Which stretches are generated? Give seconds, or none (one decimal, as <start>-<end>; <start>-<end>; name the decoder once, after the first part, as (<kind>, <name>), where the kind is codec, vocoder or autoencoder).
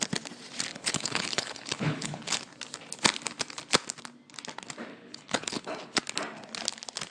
0.7-2.4 (codec, HILCodec); 4.9-6.0